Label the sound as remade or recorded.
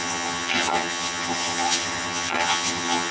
remade